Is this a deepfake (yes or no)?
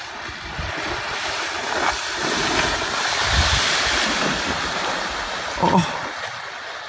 no